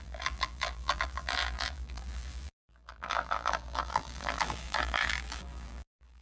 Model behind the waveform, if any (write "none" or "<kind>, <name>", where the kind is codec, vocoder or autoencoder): vocoder, BigVGAN v2